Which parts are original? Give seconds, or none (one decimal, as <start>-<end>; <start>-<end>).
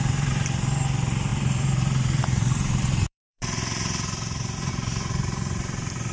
none